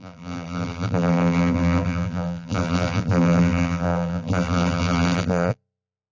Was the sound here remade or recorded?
remade